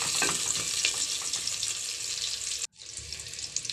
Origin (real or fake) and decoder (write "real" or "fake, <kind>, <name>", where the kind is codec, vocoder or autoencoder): real